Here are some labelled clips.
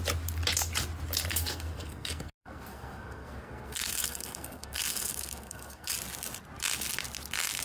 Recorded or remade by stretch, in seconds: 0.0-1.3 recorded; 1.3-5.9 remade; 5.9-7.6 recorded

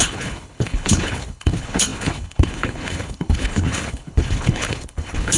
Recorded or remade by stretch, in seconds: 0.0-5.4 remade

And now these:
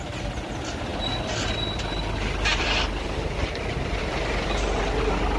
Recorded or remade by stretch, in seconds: 0.0-4.0 recorded; 4.0-4.8 remade; 4.8-5.4 recorded